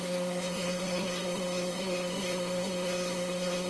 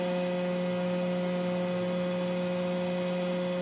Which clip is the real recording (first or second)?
second